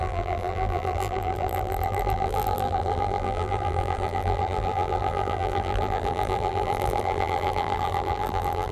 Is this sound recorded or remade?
remade